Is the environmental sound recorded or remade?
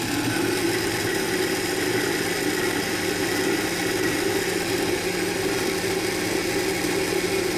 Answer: recorded